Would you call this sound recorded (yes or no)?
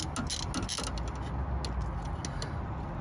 yes